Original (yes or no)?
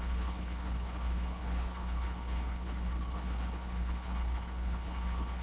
no